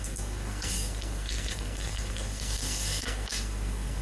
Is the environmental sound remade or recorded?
remade